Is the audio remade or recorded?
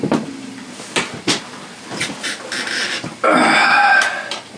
recorded